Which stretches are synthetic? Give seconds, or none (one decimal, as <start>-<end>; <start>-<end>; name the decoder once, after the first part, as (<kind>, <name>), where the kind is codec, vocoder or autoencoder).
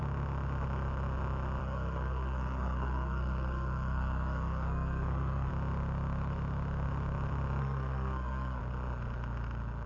1.6-5.5 (codec, SNAC); 7.6-8.6